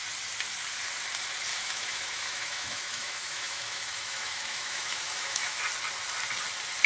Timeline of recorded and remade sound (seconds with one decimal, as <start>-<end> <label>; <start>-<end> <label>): 0.0-1.5 recorded; 1.5-5.6 remade; 5.6-6.9 recorded